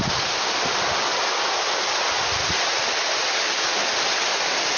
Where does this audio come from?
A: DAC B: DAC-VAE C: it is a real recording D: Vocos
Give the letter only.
C